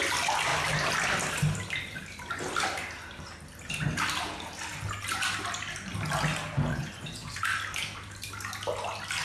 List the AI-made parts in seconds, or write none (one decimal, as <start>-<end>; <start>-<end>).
6.7-7.4